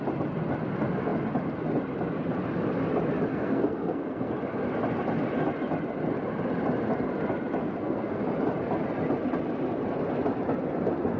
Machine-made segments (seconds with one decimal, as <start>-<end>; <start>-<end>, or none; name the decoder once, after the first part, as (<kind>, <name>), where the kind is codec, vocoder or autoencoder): 3.3-4.3 (codec, SNAC); 7.6-8.2